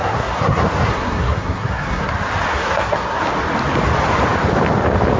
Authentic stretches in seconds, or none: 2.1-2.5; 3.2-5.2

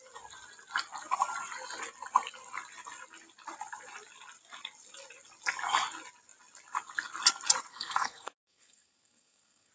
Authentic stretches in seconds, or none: 0.0-7.7

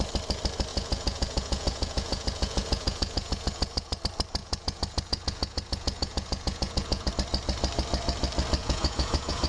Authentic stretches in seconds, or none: 0.0-0.7; 4.0-4.4; 7.1-8.6

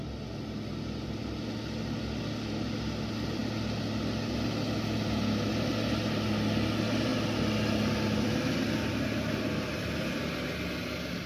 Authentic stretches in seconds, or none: 0.0-11.3